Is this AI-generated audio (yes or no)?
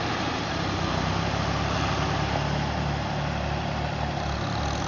no